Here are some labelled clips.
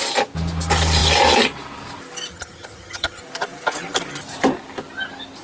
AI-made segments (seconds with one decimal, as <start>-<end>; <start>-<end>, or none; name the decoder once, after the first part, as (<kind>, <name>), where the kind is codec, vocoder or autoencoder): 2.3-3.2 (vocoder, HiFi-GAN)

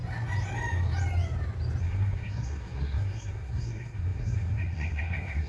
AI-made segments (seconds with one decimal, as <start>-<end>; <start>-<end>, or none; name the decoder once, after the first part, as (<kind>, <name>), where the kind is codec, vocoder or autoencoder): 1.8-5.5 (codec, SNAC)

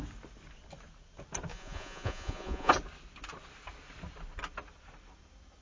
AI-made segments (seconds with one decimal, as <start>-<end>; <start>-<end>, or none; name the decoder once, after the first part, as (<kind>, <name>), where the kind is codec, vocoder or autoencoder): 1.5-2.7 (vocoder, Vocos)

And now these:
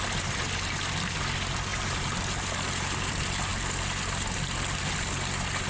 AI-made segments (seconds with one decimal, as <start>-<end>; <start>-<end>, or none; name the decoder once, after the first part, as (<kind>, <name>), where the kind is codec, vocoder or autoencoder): 1.7-2.2 (vocoder, BigVGAN v2)